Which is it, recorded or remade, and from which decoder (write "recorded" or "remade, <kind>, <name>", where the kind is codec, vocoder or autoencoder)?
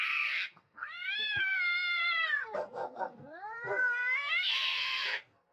remade, codec, SNAC